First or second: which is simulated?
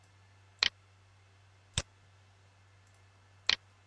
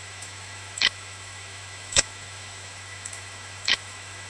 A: second